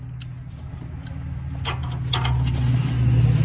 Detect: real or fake real